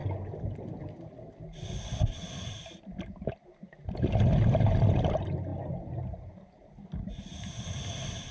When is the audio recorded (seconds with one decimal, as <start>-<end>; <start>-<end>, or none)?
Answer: 0.0-8.3